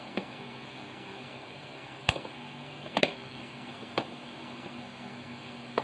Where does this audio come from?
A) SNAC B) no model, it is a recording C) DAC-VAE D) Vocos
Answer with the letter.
A